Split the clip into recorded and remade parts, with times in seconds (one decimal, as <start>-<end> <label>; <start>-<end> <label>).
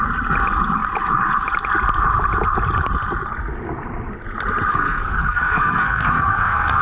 0.0-4.7 recorded; 4.7-6.8 remade